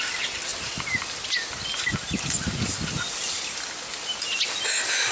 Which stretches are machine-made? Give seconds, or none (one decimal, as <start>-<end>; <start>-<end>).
none

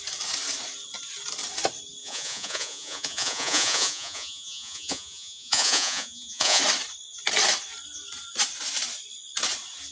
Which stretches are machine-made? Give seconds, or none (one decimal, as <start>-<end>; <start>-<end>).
2.0-6.6

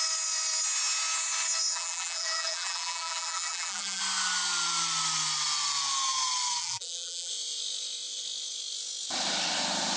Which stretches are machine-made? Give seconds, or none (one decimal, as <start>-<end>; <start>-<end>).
1.7-4.0; 6.6-7.3

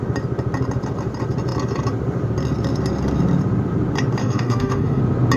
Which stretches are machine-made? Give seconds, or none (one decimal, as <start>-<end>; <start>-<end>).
4.2-5.0

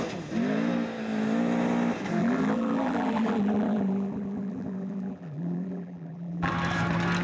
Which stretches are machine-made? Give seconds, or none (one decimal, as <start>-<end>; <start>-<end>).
2.2-6.5

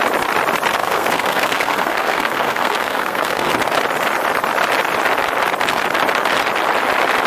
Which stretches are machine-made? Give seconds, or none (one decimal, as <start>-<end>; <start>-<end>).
0.8-3.5